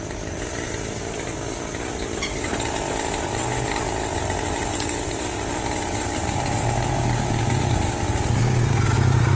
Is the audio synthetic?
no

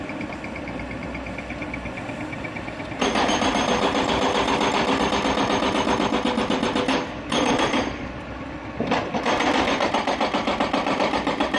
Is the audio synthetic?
yes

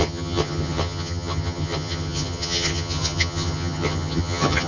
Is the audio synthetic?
yes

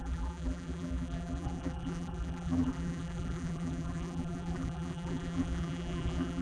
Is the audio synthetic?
yes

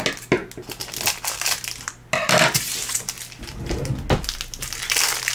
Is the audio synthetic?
no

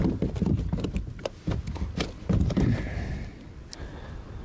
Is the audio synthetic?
no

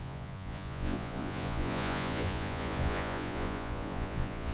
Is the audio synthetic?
yes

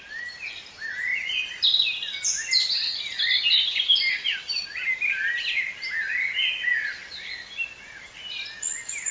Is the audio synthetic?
no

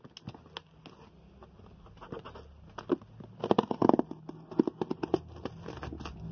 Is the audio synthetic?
no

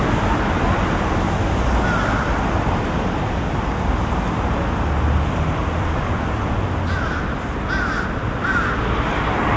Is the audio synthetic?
no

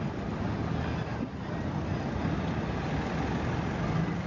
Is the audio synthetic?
no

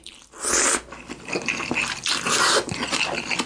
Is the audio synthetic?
no